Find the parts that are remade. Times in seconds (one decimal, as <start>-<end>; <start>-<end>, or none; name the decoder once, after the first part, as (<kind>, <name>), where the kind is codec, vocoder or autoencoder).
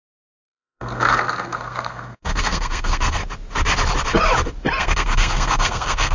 0.0-3.2 (codec, SNAC); 4.8-6.1